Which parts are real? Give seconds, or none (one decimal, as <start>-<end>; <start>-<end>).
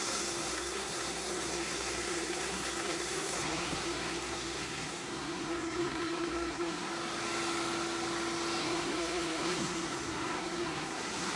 6.9-8.6